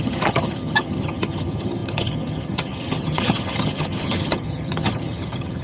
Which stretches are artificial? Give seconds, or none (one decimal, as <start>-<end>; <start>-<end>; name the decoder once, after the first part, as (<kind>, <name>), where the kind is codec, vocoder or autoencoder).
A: 0.0-5.6 (vocoder, HiFi-GAN)